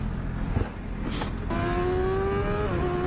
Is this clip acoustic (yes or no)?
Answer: yes